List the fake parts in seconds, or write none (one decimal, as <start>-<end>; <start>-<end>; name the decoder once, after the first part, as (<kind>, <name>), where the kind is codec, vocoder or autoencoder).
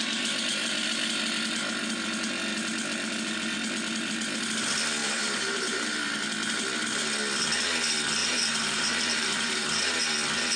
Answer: 5.0-6.1 (vocoder, BigVGAN v2); 8.2-10.0